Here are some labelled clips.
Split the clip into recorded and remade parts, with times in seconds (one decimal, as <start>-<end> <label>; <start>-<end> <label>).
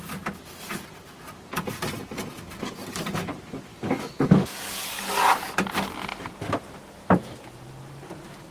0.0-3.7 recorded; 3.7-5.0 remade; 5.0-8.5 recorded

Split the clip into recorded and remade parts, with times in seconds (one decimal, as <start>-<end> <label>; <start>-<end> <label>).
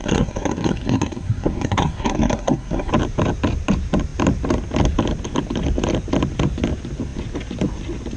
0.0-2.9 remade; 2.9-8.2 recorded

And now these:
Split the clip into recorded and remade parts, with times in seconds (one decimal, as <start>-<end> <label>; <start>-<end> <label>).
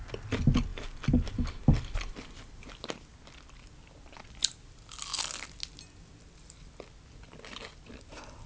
0.0-8.5 recorded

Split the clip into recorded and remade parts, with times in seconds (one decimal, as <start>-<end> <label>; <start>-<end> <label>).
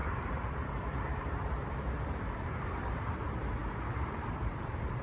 0.0-3.0 remade; 3.0-3.6 recorded; 3.6-5.0 remade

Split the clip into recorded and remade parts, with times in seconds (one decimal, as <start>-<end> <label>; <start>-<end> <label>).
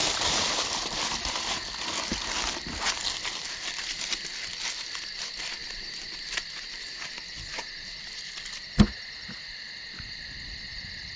0.0-1.0 remade; 1.0-5.6 recorded; 5.6-8.6 remade; 8.6-11.2 recorded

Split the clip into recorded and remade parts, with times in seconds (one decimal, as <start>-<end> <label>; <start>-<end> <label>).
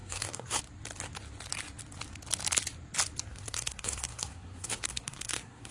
0.0-0.6 remade; 0.6-3.3 recorded; 3.3-5.7 remade